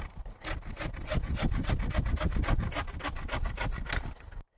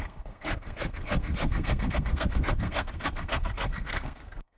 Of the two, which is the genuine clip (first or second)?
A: first